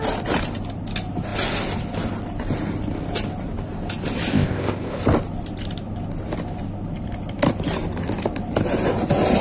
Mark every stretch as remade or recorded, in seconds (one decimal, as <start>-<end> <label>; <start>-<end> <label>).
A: 0.0-4.3 recorded; 4.3-5.0 remade; 5.0-9.4 recorded